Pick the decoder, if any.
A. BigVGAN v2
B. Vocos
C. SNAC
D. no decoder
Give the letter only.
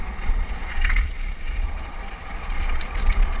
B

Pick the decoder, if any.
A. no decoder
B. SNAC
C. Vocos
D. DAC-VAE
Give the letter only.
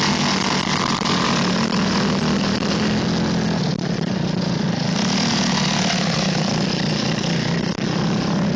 A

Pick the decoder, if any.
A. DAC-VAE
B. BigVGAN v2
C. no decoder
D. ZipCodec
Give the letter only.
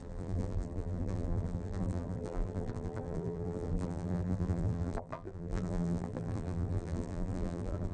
B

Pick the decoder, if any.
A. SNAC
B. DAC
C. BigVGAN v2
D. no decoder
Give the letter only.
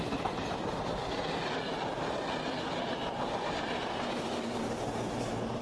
D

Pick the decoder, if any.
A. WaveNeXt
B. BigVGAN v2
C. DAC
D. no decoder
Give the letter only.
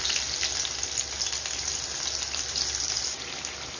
D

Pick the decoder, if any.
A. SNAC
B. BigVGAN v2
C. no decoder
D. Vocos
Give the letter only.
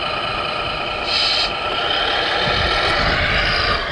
C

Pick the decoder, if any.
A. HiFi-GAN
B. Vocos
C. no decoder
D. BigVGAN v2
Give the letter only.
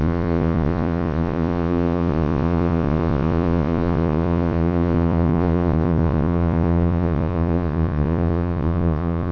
B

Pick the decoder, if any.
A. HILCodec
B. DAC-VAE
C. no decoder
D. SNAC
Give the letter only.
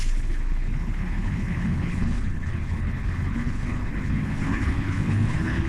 A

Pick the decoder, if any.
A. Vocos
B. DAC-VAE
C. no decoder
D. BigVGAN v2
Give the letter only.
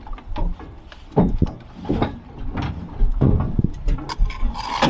C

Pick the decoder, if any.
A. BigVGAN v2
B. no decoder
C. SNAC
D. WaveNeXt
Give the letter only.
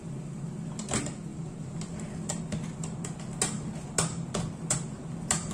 B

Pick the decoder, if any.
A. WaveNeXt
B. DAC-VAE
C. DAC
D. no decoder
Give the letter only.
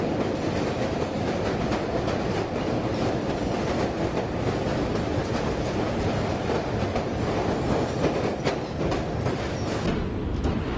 D